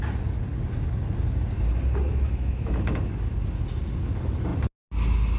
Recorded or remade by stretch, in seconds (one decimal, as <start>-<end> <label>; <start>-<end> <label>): 0.0-2.1 recorded; 2.1-3.1 remade; 3.1-5.4 recorded